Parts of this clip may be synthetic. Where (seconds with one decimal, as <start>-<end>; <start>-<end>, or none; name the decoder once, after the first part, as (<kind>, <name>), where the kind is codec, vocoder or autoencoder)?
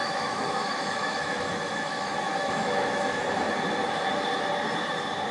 0.0-3.2 (autoencoder, DAC-VAE)